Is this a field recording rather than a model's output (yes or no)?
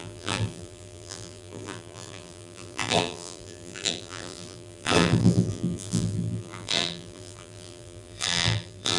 no